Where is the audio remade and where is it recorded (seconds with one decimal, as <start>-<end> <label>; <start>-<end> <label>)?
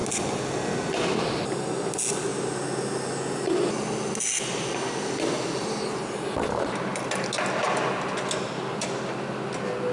0.0-9.9 recorded